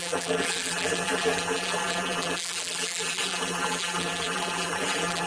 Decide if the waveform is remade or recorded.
remade